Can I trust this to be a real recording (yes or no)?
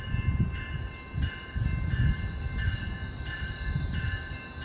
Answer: yes